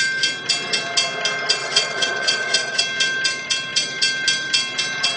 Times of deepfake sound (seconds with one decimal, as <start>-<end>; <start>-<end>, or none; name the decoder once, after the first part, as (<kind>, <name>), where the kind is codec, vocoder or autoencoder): 1.6-2.8 (vocoder, WaveNeXt)